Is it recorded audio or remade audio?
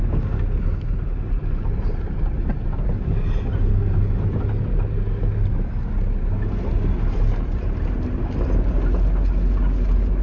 recorded